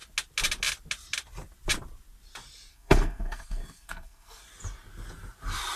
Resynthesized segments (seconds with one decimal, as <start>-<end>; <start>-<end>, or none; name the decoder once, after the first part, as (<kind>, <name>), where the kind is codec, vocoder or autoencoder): 2.7-4.4 (codec, SNAC)